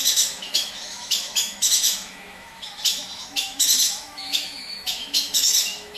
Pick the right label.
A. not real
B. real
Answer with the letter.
A